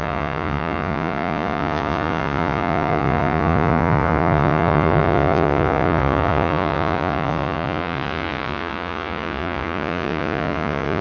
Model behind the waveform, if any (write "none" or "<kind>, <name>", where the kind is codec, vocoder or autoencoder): vocoder, Vocos